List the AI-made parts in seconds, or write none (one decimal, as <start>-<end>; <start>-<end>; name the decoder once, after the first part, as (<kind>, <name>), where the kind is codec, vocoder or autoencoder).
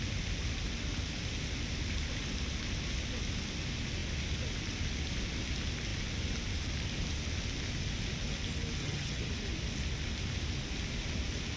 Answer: 8.8-9.3 (vocoder, HiFi-GAN)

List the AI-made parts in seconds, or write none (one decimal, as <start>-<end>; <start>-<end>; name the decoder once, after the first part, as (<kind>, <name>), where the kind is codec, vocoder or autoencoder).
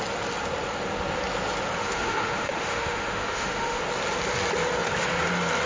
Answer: 1.8-3.8 (autoencoder, DAC-VAE)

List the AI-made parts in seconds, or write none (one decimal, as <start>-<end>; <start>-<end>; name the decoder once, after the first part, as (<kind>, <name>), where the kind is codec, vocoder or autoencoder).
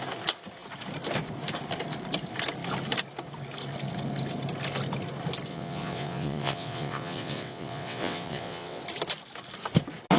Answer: 5.5-8.8 (vocoder, WaveNeXt)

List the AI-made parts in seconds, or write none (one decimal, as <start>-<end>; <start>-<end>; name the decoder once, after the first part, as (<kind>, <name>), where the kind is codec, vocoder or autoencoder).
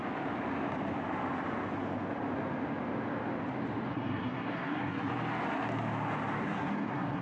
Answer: 3.9-5.1 (codec, SNAC); 6.4-7.2